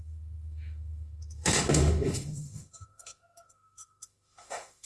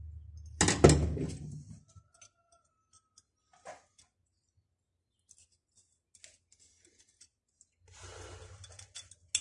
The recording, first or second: second